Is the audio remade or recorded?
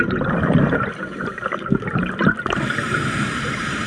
remade